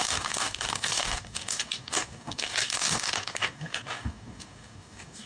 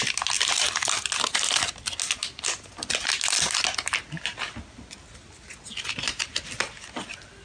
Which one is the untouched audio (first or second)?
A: second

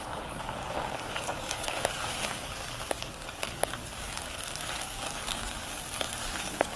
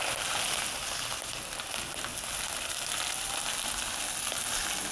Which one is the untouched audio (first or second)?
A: second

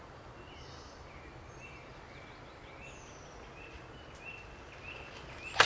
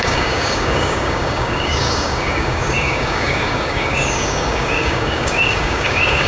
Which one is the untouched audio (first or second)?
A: first